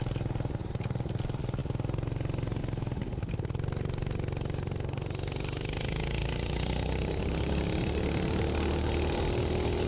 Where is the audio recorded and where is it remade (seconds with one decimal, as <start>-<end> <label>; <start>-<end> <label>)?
0.0-9.9 recorded